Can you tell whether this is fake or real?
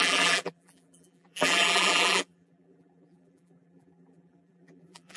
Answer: fake